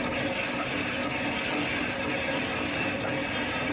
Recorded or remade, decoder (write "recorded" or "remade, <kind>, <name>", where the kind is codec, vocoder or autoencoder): recorded